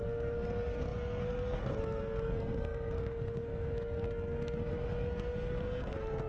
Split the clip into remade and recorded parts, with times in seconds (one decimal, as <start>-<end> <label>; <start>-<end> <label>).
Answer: 0.0-6.3 remade